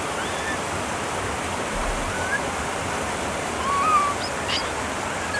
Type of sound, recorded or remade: recorded